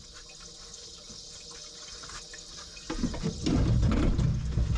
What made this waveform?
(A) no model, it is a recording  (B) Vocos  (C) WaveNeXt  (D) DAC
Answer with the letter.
A